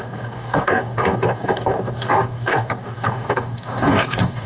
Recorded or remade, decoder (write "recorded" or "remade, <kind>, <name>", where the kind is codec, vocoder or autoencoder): remade, codec, DAC